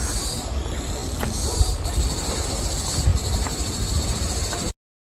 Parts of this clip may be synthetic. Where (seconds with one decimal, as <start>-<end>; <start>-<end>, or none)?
none

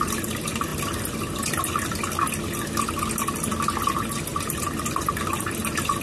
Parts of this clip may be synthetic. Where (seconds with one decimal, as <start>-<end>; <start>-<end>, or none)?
none

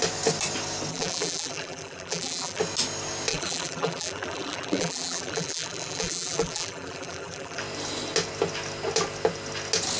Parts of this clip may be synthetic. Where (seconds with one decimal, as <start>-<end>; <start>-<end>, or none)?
0.9-2.6; 3.3-7.6

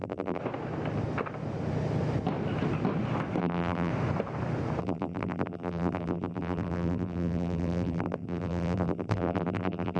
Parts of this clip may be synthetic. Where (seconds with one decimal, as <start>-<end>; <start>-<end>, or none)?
0.0-0.4; 3.4-3.9; 4.8-10.0

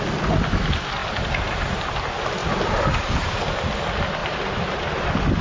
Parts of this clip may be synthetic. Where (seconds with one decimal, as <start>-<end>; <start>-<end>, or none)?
1.0-2.0; 2.4-3.8; 4.2-5.4

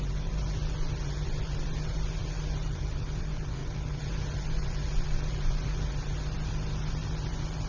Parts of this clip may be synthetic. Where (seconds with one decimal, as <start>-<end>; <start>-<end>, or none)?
0.0-7.7

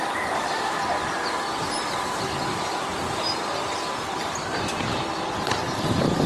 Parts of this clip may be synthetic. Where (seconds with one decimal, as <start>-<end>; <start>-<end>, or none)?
0.0-1.0; 1.7-2.9; 4.2-6.3

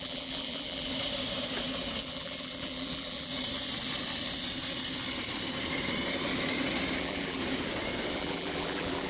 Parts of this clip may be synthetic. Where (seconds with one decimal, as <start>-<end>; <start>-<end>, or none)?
0.0-0.9; 2.0-3.3; 7.0-7.4; 8.1-9.1